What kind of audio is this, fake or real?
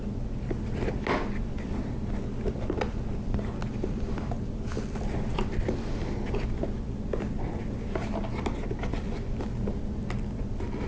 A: real